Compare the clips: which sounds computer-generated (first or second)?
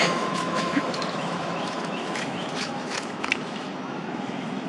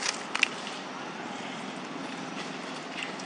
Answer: first